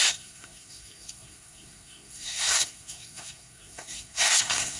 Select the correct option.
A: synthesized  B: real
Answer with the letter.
A